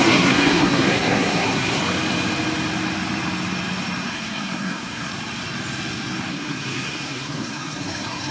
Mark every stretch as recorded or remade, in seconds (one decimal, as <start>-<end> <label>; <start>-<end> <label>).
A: 0.0-1.8 remade; 1.8-4.1 recorded; 4.1-5.1 remade; 5.1-6.3 recorded; 6.3-8.3 remade

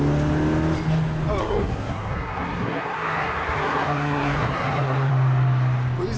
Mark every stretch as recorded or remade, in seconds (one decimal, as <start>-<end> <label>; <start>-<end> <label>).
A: 0.0-1.4 recorded; 1.4-5.1 remade; 5.1-6.2 recorded

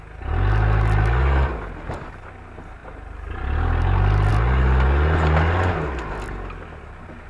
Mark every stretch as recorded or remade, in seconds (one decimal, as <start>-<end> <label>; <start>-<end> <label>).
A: 0.0-7.3 recorded

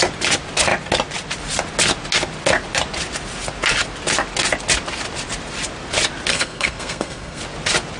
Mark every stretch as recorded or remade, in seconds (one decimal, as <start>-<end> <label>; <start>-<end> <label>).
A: 0.0-6.3 recorded; 6.3-7.4 remade; 7.4-8.0 recorded

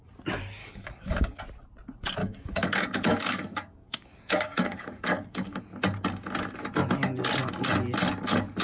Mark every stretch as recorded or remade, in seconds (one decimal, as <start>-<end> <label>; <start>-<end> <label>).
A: 0.0-0.6 recorded; 0.6-1.4 remade; 1.4-2.2 recorded; 2.2-5.6 remade; 5.6-8.6 recorded

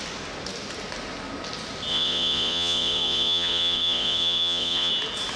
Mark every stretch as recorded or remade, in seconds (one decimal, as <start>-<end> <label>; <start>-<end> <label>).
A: 0.0-1.9 recorded; 1.9-4.9 remade; 4.9-5.4 recorded